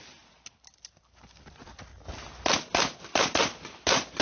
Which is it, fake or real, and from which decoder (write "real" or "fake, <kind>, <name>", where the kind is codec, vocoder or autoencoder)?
real